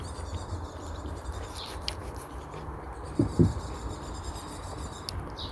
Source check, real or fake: fake